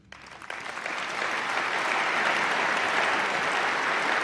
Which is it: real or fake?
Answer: real